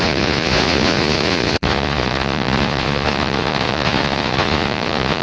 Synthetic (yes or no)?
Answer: yes